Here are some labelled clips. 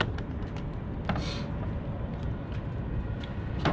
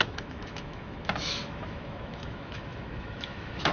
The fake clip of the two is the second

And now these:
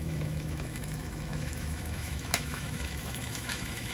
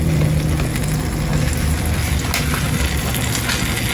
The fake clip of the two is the first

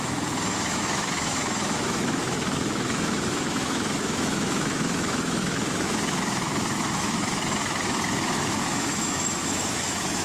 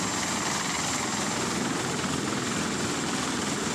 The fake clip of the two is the first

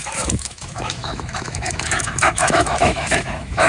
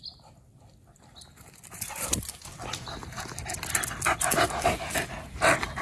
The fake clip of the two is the first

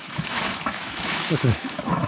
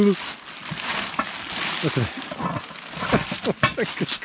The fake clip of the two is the first